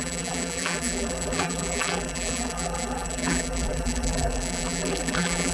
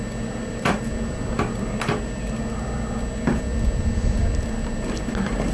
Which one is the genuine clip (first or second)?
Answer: second